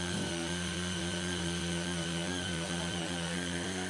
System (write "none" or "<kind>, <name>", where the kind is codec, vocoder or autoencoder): vocoder, Vocos